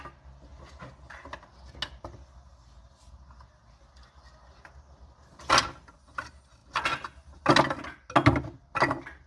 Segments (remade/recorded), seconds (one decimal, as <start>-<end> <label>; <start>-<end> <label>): 0.0-9.3 recorded